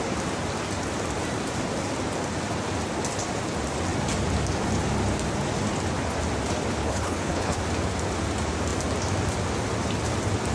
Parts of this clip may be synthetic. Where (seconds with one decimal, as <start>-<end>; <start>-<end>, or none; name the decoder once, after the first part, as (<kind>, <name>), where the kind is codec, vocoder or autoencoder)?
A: 6.8-7.6 (codec, HILCodec)